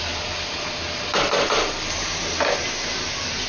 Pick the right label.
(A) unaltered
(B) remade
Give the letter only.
A